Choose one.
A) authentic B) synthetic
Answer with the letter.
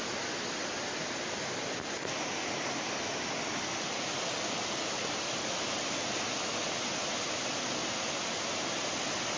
A